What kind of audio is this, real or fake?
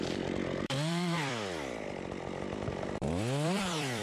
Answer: fake